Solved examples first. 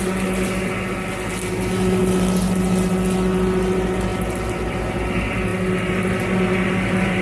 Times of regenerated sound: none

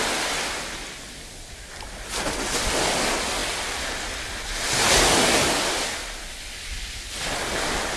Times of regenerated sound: none